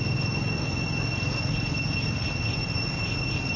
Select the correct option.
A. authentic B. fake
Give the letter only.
A